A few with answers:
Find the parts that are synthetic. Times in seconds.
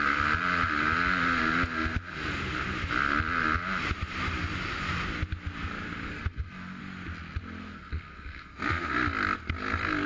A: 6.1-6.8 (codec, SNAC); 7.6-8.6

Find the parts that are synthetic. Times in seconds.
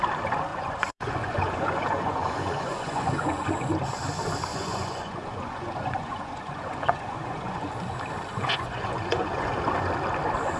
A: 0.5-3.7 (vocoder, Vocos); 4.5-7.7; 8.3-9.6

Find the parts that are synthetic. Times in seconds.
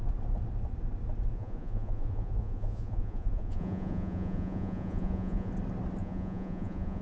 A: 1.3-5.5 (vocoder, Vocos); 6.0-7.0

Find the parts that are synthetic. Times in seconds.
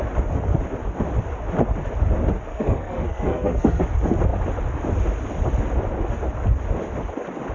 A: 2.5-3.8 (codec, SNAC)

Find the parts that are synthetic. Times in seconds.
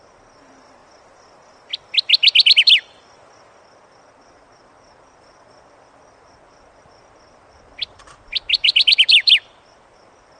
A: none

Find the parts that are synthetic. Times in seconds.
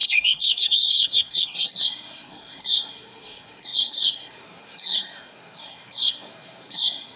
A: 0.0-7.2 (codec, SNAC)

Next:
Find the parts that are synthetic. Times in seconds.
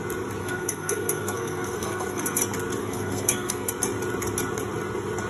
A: 0.4-2.4 (codec, SNAC); 2.8-3.7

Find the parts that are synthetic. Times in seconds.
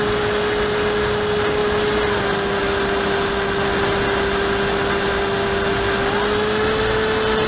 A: none